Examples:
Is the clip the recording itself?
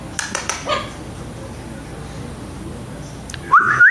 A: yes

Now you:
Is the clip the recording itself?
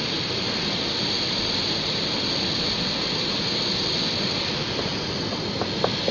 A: yes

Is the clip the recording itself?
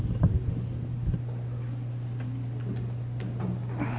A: yes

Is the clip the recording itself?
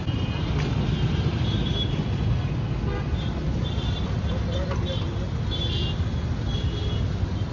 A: yes